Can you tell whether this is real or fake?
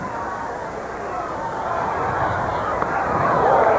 real